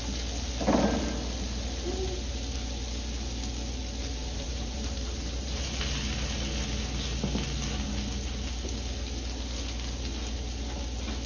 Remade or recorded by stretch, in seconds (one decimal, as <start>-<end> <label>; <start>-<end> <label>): 0.0-4.2 recorded; 4.2-5.8 remade; 5.8-11.3 recorded